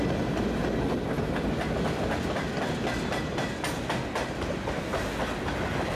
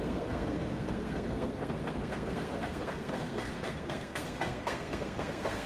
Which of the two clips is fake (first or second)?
second